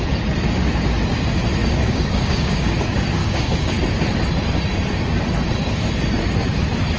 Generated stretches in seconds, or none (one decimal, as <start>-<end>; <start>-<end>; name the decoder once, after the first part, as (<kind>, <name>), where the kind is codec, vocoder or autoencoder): 1.6-2.7 (codec, DAC); 3.2-3.7